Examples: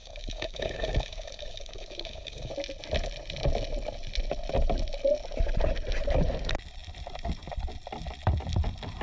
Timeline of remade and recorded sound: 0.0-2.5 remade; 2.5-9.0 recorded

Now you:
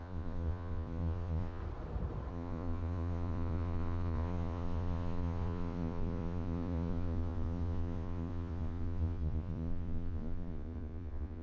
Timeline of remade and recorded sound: 0.0-1.6 remade; 1.6-2.3 recorded; 2.3-11.4 remade